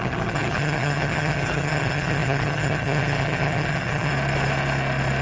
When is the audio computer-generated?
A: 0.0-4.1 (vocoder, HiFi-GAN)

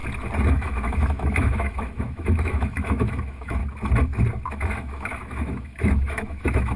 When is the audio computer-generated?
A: 0.5-3.6 (autoencoder, DAC-VAE); 4.5-6.8

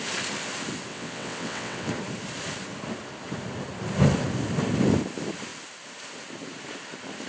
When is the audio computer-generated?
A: 0.9-1.9 (vocoder, WaveNeXt)